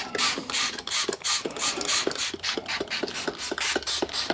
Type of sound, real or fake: real